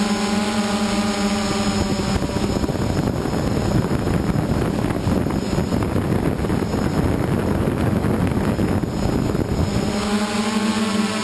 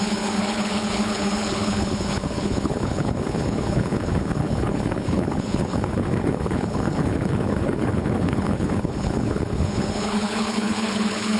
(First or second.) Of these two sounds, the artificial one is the second